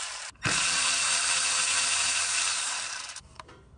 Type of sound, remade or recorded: remade